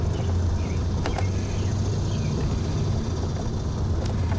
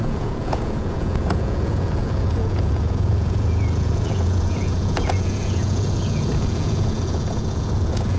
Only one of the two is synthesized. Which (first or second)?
second